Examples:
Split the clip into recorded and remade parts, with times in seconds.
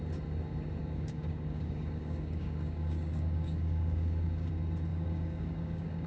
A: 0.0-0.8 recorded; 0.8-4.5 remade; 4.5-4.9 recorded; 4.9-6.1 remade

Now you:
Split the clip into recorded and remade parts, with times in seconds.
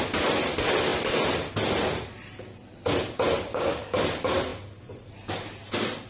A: 0.0-3.5 recorded; 3.5-4.0 remade; 4.0-6.1 recorded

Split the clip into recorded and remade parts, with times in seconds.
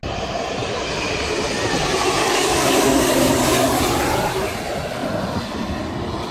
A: 0.0-2.2 recorded; 2.2-3.3 remade; 3.3-6.3 recorded